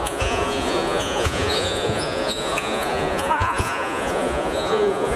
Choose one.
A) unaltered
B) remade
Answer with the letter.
B